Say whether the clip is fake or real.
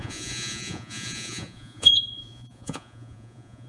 fake